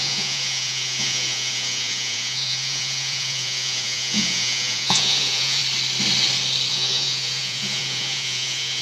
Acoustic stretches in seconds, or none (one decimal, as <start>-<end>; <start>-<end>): 5.6-6.7